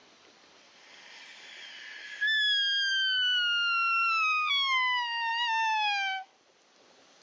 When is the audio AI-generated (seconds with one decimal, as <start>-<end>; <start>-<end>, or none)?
none